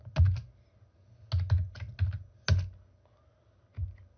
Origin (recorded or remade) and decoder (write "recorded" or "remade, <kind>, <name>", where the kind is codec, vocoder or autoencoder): recorded